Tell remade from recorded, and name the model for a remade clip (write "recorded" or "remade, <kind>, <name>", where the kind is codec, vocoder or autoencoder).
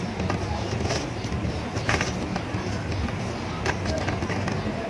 recorded